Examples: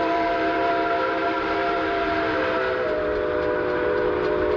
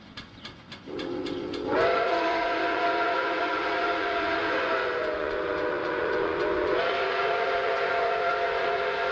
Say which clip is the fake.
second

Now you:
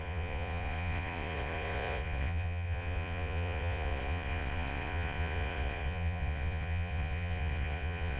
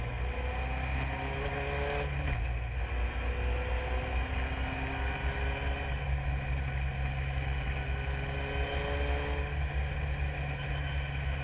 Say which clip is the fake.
first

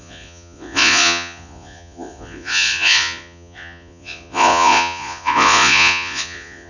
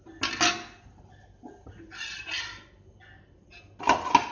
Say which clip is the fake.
first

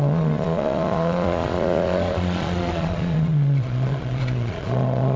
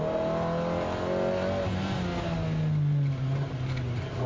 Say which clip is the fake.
first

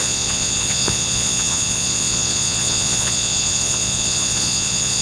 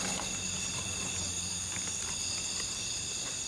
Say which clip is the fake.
first